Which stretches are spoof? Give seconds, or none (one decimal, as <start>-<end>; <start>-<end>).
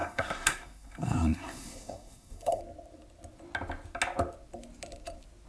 0.0-2.6